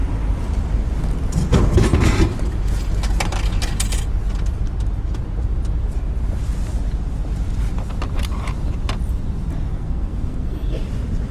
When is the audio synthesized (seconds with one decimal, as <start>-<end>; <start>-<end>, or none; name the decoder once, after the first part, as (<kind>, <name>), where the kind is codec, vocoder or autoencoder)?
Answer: 9.7-10.8 (codec, SNAC)